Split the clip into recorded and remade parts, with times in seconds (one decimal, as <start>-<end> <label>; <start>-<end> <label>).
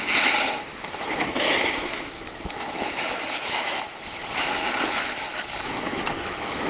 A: 0.0-0.7 recorded; 0.7-3.8 remade; 3.8-5.3 recorded; 5.3-6.7 remade